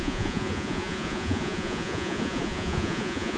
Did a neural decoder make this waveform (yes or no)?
yes